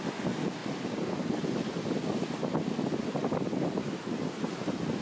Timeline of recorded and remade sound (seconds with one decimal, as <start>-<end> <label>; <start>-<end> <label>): 0.0-5.0 recorded